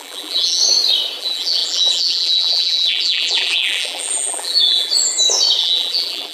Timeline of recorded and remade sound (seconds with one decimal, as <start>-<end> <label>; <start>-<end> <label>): 0.0-0.6 remade; 0.6-1.2 recorded; 1.2-4.9 remade; 4.9-5.6 recorded; 5.6-6.3 remade